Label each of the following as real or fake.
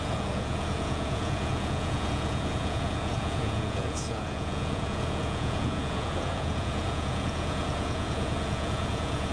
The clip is fake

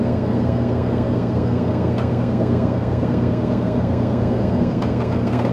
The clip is fake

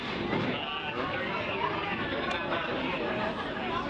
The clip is real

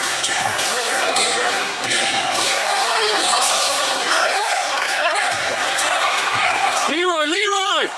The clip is fake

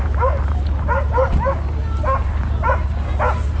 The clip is real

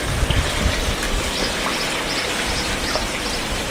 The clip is fake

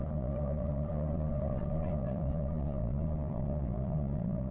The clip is fake